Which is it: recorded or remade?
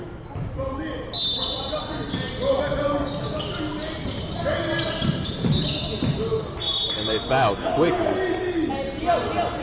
recorded